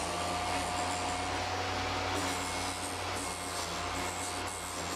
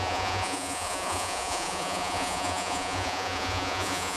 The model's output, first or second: second